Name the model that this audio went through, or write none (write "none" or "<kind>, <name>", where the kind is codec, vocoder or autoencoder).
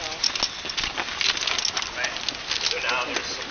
none